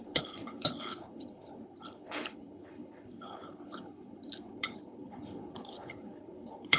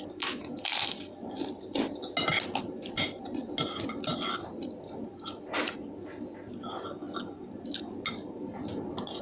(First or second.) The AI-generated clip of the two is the first